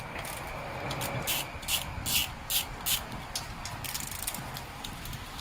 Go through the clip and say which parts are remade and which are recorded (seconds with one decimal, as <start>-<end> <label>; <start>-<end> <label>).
0.0-5.4 recorded